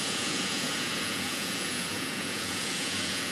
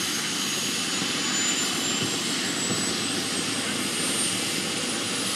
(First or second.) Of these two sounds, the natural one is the second